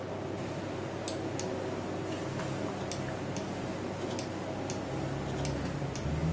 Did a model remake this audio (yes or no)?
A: no